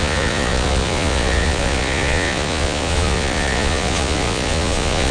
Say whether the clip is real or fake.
fake